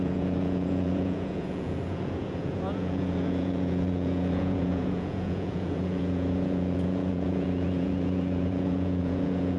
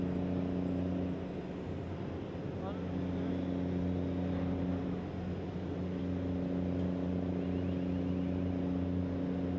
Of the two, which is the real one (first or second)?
second